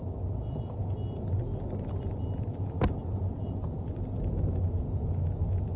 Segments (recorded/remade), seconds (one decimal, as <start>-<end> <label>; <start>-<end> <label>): 0.0-5.8 recorded